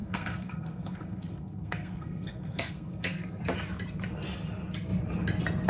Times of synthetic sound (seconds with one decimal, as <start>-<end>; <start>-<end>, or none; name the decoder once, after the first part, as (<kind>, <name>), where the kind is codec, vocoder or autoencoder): 0.0-3.4 (codec, SNAC)